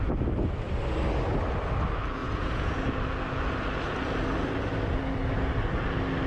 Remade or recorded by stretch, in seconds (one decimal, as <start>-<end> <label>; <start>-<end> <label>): 0.0-2.2 recorded; 2.2-2.9 remade; 2.9-6.3 recorded